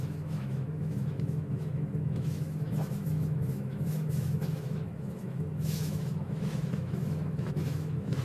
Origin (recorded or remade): remade